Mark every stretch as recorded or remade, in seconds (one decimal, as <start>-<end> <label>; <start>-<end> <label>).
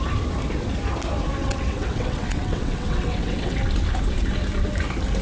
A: 0.0-1.4 recorded; 1.4-3.6 remade; 3.6-5.2 recorded